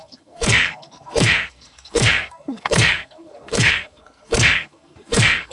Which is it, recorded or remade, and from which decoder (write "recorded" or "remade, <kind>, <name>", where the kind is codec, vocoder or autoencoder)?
remade, codec, SNAC